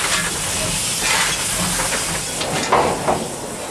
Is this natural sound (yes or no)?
yes